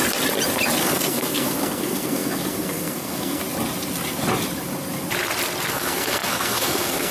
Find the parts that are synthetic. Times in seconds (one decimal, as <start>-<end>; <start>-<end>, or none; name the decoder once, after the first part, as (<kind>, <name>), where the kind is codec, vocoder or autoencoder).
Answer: 0.8-3.4 (codec, SNAC); 5.7-7.1